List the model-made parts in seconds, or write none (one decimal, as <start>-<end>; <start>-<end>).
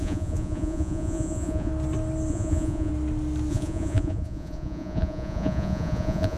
0.0-1.7; 2.3-2.9; 3.5-6.4